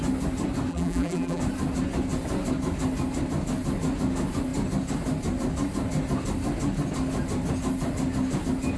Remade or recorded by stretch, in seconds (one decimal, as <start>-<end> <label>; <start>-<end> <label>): 0.0-0.7 recorded; 0.7-1.4 remade; 1.4-8.8 recorded